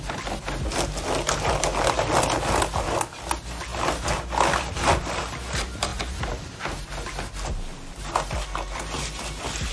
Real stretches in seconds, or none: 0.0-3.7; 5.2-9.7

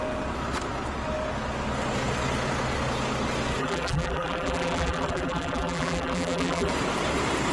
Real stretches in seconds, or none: 0.0-3.6; 6.7-7.5

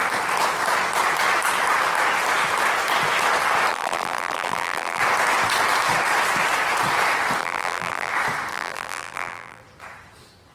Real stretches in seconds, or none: 0.0-3.7; 5.0-7.4; 8.1-8.5; 9.6-10.5

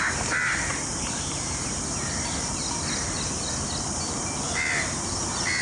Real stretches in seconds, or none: 0.0-0.7; 1.8-5.6

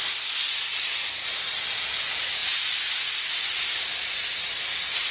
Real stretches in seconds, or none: 0.0-5.1

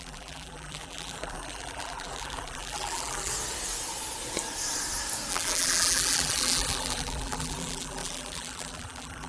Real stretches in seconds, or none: 3.3-5.3